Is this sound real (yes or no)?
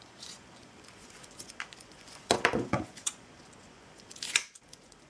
no